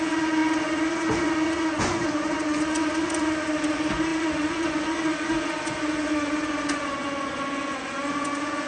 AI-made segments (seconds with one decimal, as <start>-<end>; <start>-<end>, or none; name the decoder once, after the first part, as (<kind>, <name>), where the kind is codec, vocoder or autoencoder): 0.0-8.7 (vocoder, Vocos)